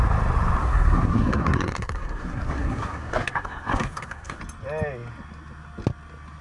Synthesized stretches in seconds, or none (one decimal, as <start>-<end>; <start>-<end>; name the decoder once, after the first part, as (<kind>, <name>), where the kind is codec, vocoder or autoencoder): 0.6-4.4 (codec, SNAC)

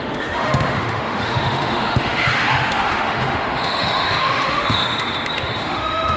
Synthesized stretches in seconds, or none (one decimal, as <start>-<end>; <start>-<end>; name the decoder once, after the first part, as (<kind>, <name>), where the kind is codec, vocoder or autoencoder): 0.0-6.2 (autoencoder, DAC-VAE)

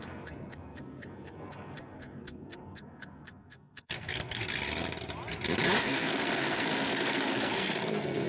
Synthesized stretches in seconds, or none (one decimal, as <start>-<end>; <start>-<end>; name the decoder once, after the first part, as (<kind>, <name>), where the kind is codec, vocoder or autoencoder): 0.0-4.4 (codec, SNAC); 5.8-8.3

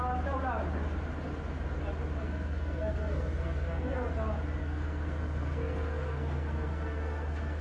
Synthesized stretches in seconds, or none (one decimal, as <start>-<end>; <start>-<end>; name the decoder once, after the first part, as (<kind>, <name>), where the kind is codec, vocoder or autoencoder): 2.2-4.1 (codec, SNAC); 4.6-7.6